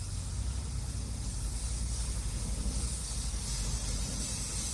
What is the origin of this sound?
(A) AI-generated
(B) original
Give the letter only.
B